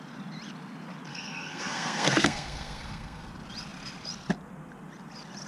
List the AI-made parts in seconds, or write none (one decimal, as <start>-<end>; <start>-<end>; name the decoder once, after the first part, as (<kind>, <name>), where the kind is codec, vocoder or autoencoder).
1.1-3.3 (codec, SNAC)